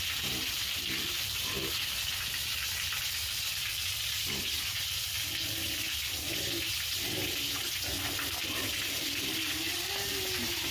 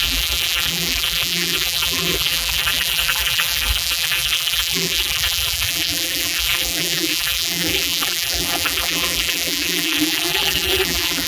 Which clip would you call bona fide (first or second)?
first